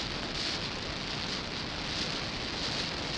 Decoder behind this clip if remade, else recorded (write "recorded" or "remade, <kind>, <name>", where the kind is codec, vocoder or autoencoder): recorded